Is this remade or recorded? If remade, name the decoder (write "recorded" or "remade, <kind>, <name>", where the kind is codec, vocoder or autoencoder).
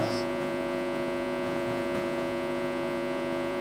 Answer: remade, vocoder, Vocos